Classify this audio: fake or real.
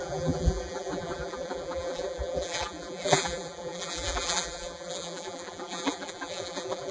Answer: fake